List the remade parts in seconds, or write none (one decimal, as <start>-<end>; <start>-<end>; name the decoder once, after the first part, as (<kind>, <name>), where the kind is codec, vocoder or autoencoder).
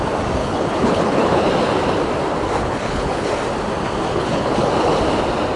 0.4-1.5 (codec, HILCodec); 2.6-3.3; 4.1-4.7